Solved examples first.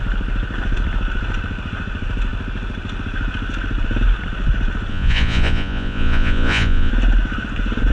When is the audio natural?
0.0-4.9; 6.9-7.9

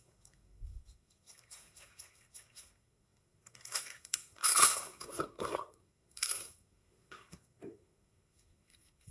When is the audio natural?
none

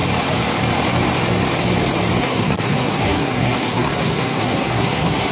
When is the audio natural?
0.0-2.2

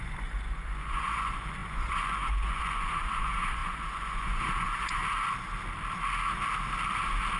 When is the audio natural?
5.0-7.4

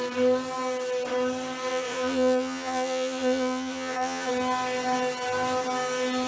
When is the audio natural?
0.0-1.7; 4.3-6.3